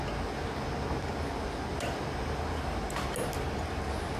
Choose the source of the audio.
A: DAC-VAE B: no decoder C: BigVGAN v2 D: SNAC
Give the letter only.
B